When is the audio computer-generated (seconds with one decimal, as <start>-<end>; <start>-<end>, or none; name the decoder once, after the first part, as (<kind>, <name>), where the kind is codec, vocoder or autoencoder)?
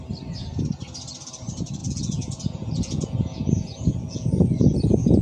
1.8-5.2 (vocoder, Vocos)